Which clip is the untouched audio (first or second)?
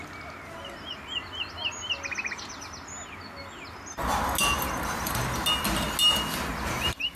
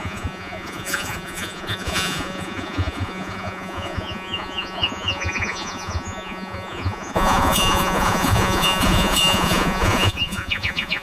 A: first